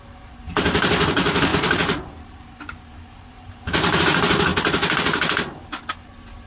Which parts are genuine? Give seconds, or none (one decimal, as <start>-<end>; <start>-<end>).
4.5-6.0